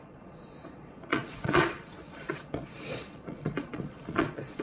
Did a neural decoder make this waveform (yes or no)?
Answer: yes